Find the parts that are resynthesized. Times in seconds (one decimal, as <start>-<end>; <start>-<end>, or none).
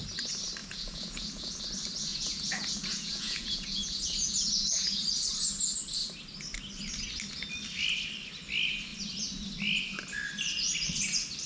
0.6-1.6; 2.1-5.0